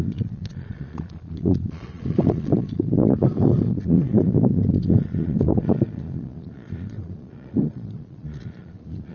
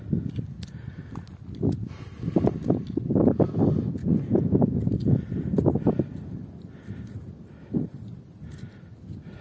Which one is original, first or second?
second